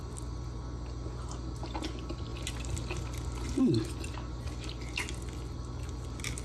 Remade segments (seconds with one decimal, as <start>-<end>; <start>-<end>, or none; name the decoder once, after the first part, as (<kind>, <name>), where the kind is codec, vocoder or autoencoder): none